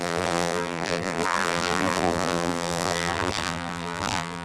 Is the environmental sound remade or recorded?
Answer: remade